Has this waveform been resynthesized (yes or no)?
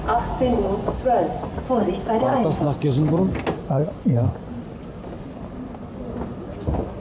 no